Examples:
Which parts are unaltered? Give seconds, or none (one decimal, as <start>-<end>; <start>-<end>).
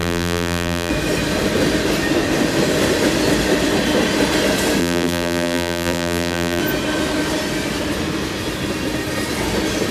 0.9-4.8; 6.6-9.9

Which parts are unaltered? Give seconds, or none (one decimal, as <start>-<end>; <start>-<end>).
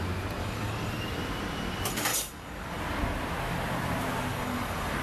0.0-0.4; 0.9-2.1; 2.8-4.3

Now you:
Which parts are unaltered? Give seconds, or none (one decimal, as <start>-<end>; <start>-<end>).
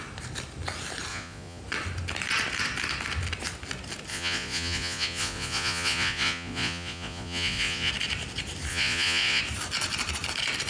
0.0-1.1; 1.6-4.1; 7.9-8.7; 9.4-10.7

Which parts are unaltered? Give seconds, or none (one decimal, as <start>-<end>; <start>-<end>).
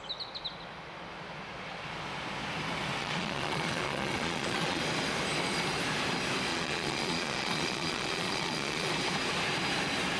0.0-3.0; 4.8-6.5; 8.9-10.2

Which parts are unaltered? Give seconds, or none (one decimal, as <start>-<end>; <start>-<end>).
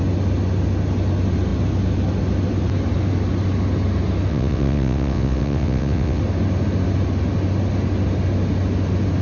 0.0-4.3; 6.2-9.2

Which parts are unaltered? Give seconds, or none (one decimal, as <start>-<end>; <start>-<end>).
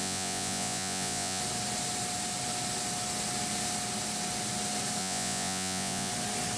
1.4-5.0; 6.1-6.6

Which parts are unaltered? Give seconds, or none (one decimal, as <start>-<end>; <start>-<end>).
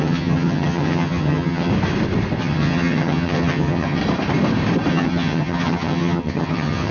1.7-2.4; 4.0-4.9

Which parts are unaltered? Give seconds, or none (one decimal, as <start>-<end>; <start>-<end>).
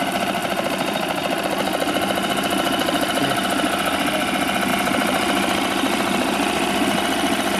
0.0-0.4; 1.4-4.7